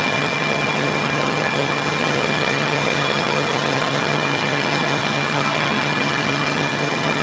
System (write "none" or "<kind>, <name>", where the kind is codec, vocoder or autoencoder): vocoder, HiFi-GAN